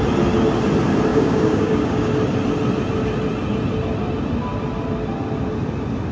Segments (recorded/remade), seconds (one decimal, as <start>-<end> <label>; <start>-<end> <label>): 0.0-1.1 recorded; 1.1-2.1 remade; 2.1-6.1 recorded